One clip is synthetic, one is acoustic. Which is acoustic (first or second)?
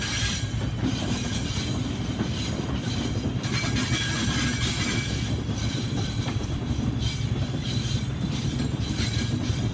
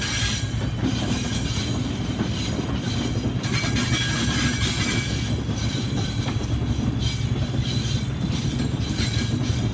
second